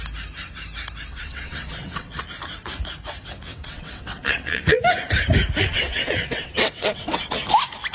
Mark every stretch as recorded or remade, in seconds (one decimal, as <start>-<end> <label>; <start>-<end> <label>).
0.0-1.1 recorded; 1.1-2.2 remade; 2.2-3.5 recorded; 3.5-4.8 remade; 4.8-5.6 recorded; 5.6-7.3 remade; 7.3-7.9 recorded